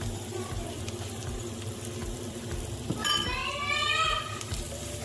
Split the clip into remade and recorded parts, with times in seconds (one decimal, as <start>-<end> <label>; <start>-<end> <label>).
0.0-3.4 remade; 3.4-4.2 recorded; 4.2-5.0 remade